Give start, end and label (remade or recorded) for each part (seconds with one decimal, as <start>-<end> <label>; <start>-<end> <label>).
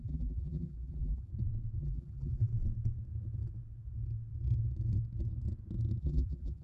0.0-1.3 remade; 1.3-1.8 recorded; 1.8-2.5 remade; 2.5-6.0 recorded; 6.0-6.6 remade